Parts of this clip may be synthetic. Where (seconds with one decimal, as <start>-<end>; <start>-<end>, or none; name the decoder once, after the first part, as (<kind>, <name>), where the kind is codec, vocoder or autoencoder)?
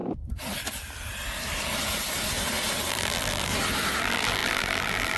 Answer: 2.9-3.5 (vocoder, BigVGAN v2); 4.0-5.2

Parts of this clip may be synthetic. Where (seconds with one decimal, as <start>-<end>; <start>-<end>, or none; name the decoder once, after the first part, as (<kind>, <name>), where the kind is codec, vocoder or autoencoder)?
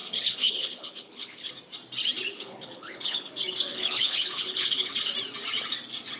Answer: 0.0-1.5 (codec, HILCodec); 2.3-3.3; 3.7-4.9